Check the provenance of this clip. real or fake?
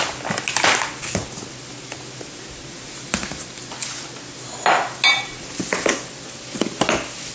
real